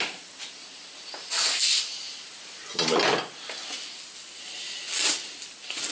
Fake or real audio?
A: real